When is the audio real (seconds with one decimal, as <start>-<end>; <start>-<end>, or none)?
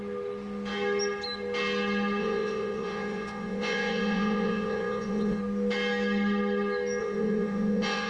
0.0-2.2; 5.4-7.0